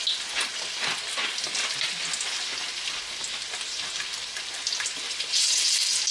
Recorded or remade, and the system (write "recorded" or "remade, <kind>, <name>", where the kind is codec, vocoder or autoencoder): recorded